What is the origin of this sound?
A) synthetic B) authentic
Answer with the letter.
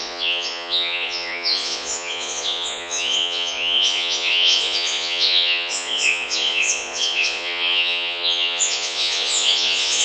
A